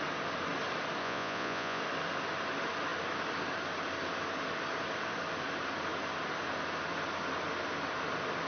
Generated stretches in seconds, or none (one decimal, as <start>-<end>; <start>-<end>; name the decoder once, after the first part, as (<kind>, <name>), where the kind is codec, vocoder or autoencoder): 1.0-1.8 (vocoder, Vocos)